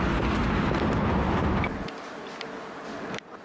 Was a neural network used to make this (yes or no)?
no